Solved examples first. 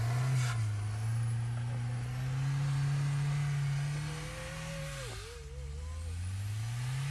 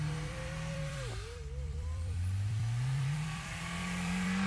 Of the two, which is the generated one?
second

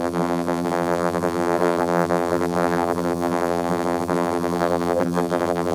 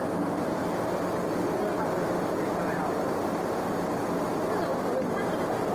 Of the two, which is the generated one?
first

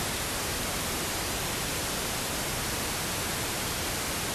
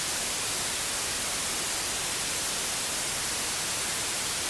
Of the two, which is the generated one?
first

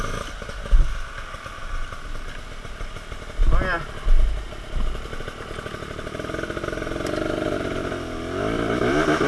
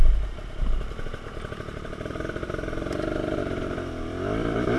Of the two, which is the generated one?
second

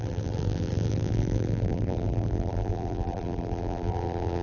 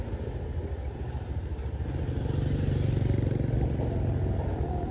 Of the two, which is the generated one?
first